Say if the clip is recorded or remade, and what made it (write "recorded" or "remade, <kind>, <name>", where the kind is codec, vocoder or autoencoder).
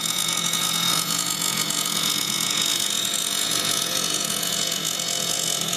remade, vocoder, Vocos